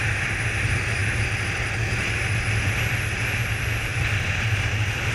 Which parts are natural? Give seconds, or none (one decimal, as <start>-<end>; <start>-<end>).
0.0-5.1